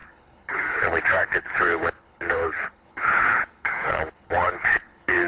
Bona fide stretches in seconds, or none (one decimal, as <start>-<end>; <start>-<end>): none

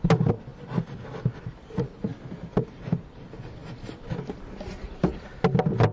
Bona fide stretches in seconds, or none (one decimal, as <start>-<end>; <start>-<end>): 0.0-5.9

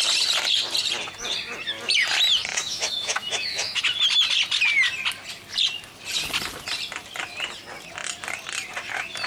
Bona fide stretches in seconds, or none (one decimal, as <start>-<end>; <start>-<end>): 0.0-2.5; 3.8-9.3

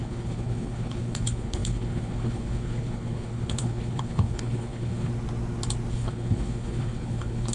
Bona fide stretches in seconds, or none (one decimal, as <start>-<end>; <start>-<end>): 5.1-5.9

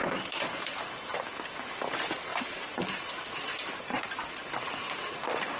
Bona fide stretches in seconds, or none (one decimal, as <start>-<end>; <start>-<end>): 1.2-2.3; 3.7-4.8

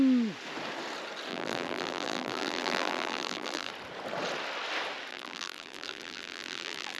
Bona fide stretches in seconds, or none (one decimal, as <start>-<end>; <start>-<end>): 0.0-1.3; 3.7-5.1

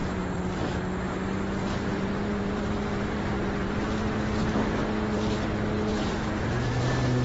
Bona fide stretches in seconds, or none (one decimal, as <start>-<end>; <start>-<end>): 0.5-1.6; 3.8-5.9; 6.8-7.2